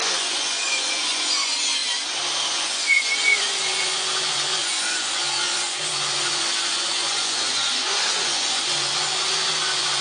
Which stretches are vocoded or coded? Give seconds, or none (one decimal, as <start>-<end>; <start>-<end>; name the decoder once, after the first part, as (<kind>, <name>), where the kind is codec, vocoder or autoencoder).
0.0-1.8 (vocoder, Vocos); 2.5-10.0

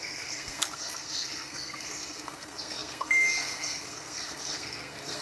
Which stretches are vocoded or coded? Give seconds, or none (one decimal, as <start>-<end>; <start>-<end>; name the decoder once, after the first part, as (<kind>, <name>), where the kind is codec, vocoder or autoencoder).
0.0-5.2 (codec, SNAC)

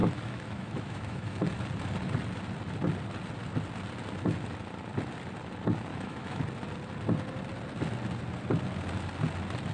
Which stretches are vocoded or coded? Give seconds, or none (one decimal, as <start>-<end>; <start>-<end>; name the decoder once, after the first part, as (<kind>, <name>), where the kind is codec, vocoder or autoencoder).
0.0-1.4 (autoencoder, DAC-VAE); 5.9-6.4

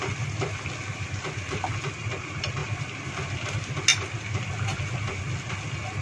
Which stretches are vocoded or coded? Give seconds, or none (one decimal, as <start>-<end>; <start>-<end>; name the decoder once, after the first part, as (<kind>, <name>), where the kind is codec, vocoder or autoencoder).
3.9-4.4 (vocoder, BigVGAN v2)